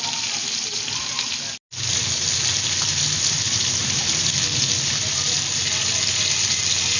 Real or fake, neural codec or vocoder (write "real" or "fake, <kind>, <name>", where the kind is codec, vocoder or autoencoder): real